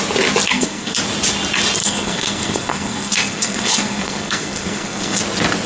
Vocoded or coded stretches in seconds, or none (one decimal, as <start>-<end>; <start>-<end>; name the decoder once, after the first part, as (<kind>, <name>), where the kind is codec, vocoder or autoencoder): 0.5-1.0 (codec, SNAC); 1.8-5.2